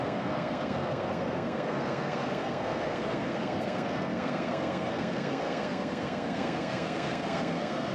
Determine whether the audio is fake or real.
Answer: fake